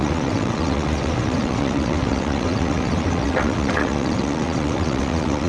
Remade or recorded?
remade